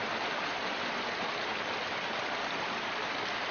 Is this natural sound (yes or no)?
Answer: yes